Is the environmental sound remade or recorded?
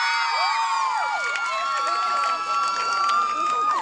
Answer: recorded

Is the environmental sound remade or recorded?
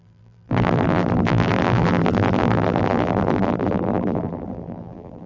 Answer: remade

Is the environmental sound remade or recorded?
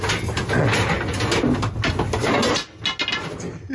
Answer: recorded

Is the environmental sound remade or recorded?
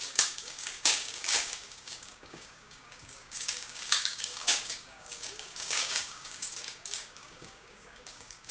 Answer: remade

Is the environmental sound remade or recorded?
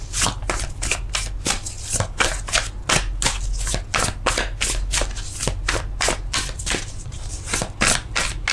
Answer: recorded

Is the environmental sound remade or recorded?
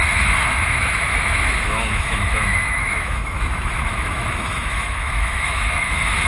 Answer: remade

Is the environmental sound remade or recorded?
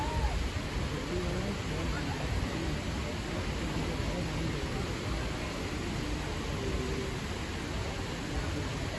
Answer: recorded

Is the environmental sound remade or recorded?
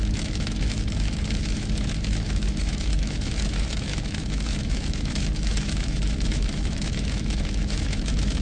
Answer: remade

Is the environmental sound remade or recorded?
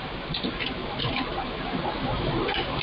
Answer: recorded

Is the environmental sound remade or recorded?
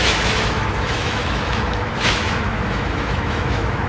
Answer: remade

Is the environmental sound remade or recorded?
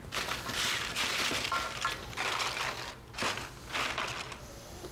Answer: recorded